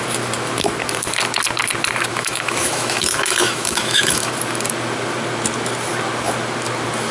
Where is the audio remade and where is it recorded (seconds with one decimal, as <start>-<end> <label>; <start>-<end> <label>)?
0.0-2.1 recorded; 2.1-4.3 remade; 4.3-7.1 recorded